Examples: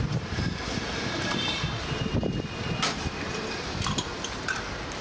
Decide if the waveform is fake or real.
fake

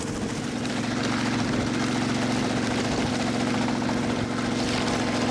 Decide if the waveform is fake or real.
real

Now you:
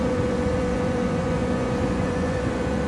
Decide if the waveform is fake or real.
fake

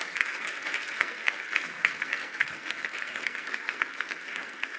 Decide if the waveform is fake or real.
fake